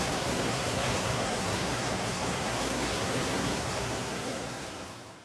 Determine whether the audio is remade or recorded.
remade